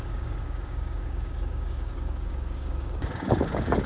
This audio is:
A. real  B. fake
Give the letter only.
B